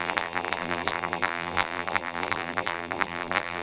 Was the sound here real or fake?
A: fake